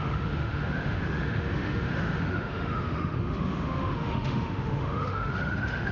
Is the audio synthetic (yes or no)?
yes